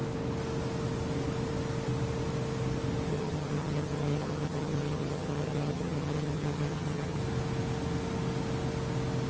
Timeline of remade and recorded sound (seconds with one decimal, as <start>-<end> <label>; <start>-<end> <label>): 0.0-3.1 recorded; 3.1-7.2 remade; 7.2-9.3 recorded